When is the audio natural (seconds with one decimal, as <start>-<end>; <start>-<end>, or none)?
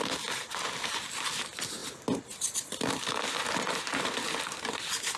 0.0-5.2